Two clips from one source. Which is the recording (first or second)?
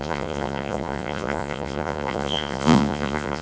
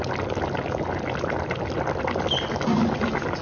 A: second